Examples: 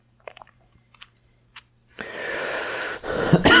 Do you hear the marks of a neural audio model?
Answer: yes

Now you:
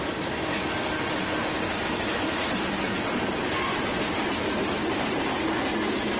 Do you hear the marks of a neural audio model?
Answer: no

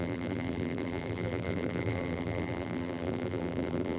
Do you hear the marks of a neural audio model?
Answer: yes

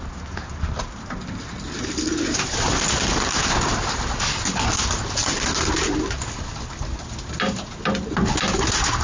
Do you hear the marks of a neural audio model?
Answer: no